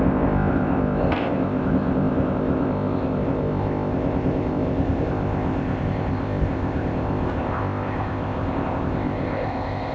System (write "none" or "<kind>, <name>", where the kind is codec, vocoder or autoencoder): codec, ZipCodec